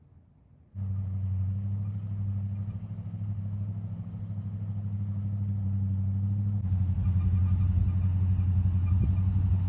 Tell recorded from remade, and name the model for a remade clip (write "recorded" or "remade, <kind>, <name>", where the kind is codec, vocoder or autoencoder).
recorded